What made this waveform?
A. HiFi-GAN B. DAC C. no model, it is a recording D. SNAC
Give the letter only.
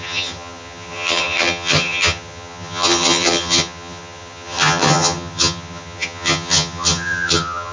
A